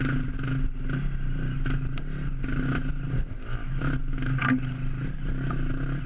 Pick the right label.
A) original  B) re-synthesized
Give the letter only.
A